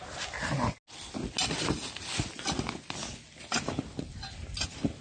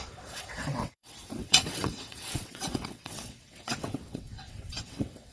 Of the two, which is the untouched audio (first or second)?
first